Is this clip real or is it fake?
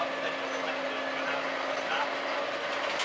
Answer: real